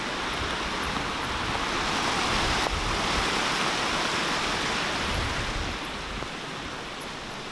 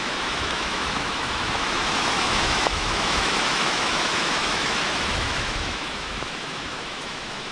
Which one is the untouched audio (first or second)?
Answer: first